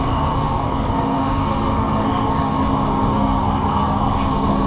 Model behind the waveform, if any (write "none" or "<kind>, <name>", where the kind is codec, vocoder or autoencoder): codec, SNAC